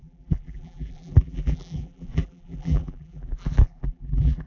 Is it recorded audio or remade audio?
remade